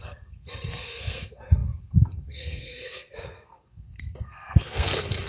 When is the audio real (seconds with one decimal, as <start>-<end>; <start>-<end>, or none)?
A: none